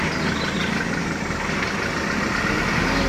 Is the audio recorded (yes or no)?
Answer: yes